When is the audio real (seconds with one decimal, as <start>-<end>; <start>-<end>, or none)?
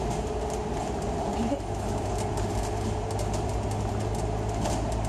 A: 0.0-5.1